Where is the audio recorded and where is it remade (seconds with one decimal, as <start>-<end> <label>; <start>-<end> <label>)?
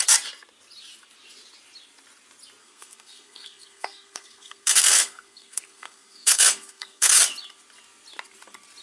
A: 0.0-2.6 recorded; 2.6-7.1 remade; 7.1-8.8 recorded